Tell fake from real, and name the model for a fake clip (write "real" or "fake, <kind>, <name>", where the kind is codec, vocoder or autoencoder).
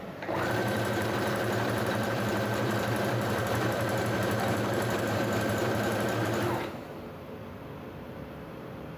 fake, vocoder, BigVGAN v2